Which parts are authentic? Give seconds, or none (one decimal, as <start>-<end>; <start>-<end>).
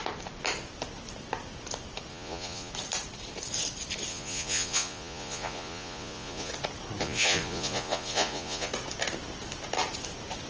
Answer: 0.0-2.1; 2.7-4.1; 6.5-7.0; 8.7-10.5